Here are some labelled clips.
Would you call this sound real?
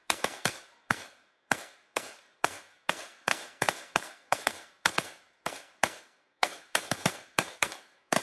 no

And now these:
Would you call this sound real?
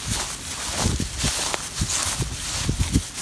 yes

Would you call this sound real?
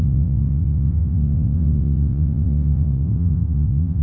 no